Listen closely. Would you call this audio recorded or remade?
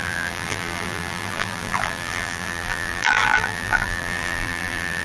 remade